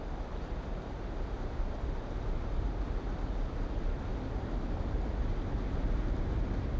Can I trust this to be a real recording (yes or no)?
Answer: yes